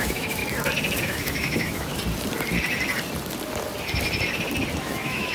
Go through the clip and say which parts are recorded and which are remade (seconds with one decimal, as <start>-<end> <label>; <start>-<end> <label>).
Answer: 0.0-0.4 remade; 0.4-1.0 recorded; 1.0-1.9 remade; 1.9-4.8 recorded; 4.8-5.3 remade